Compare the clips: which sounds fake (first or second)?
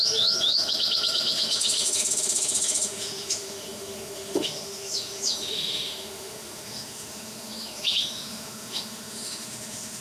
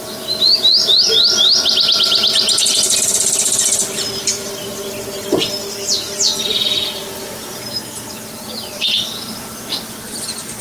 first